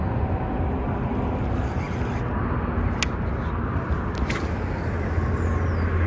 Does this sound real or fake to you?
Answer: real